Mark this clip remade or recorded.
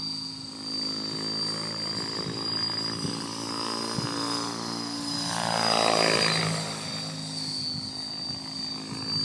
recorded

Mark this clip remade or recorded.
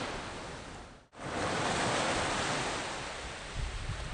recorded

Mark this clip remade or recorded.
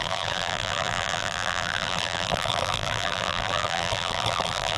remade